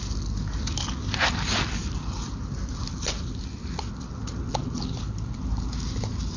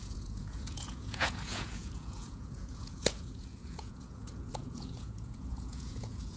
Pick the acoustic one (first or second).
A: first